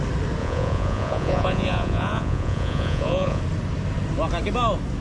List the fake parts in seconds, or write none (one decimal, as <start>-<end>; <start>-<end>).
0.4-3.4